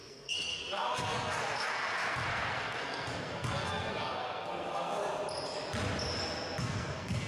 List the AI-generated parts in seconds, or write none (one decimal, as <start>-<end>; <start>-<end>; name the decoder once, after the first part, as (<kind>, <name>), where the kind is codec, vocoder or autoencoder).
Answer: 0.0-5.0 (codec, SNAC); 6.6-7.3